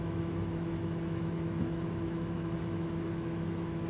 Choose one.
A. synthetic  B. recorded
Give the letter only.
A